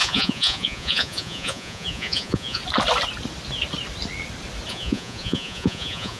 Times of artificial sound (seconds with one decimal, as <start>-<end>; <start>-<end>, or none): 0.0-2.6; 4.7-6.2